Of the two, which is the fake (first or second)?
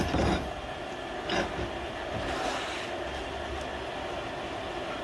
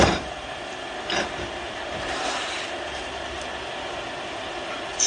second